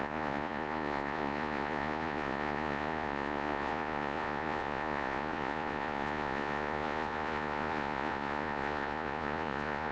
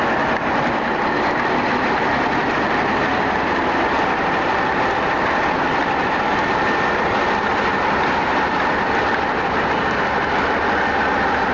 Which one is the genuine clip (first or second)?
second